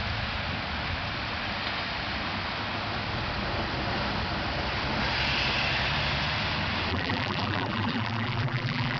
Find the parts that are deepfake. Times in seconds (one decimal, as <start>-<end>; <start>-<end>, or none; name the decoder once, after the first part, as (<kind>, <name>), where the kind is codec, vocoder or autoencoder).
6.9-9.0 (vocoder, BigVGAN v2)